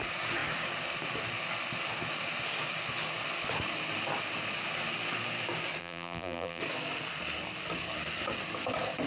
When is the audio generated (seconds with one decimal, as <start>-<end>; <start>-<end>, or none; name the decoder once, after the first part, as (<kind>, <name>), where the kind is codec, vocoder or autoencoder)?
5.8-6.6 (vocoder, BigVGAN v2)